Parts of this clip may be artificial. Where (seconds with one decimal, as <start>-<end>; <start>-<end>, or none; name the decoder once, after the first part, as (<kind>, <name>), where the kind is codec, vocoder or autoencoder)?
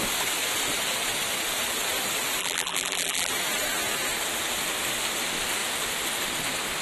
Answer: 2.4-3.3 (vocoder, BigVGAN v2)